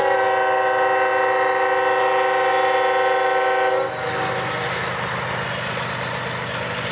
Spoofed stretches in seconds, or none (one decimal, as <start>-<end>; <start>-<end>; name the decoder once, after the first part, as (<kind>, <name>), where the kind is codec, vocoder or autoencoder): none